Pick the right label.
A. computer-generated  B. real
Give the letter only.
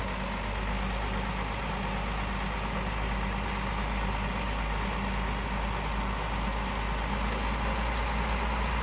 B